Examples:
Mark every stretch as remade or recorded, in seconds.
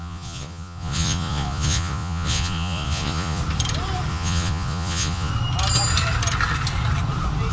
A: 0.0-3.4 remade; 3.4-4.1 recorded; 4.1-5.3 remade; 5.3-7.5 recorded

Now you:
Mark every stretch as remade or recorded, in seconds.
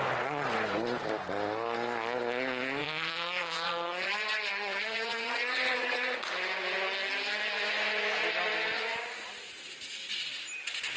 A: 0.0-2.8 recorded; 2.8-6.2 remade; 6.2-11.0 recorded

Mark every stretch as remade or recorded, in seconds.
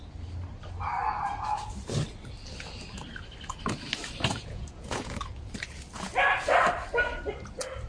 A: 0.0-4.3 recorded; 4.3-5.2 remade; 5.2-7.9 recorded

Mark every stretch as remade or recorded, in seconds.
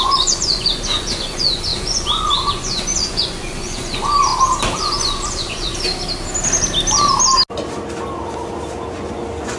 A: 0.0-4.3 remade; 4.3-4.8 recorded; 4.8-5.7 remade; 5.7-8.9 recorded; 8.9-9.6 remade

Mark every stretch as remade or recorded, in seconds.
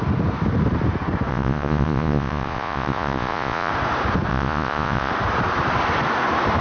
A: 0.0-1.3 recorded; 1.3-3.7 remade; 3.7-4.3 recorded; 4.3-5.1 remade; 5.1-6.6 recorded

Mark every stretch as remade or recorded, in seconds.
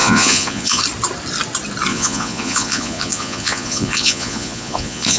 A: 0.0-0.8 remade; 0.8-1.9 recorded; 1.9-5.2 remade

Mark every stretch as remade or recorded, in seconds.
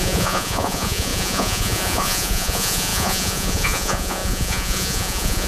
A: 0.0-5.5 remade